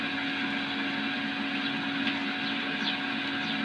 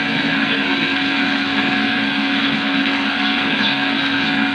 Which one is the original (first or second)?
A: first